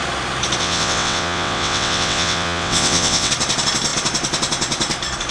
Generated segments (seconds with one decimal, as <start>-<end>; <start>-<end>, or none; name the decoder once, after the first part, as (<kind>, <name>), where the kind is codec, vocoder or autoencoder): 0.6-3.3 (vocoder, WaveNeXt)